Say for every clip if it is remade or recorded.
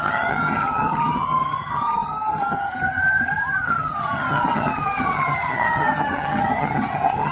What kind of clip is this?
remade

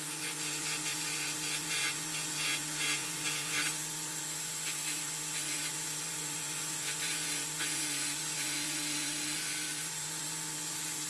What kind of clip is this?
remade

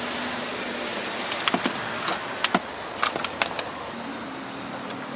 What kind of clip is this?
recorded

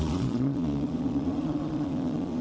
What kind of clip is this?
remade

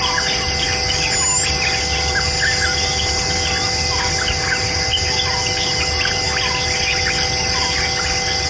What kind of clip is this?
recorded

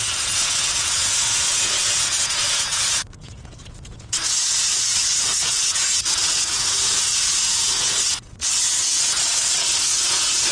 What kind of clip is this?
remade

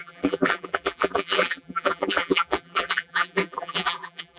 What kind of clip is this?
remade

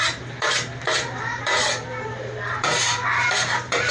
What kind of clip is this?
remade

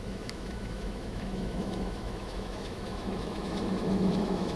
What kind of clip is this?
remade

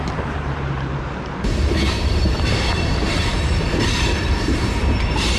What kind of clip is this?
remade